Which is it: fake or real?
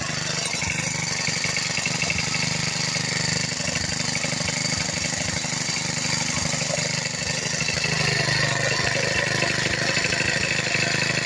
real